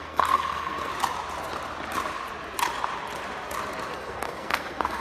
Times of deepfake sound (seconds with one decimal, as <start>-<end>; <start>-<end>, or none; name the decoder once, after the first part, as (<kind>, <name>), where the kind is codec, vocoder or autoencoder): 0.0-0.9 (codec, SNAC); 3.9-5.0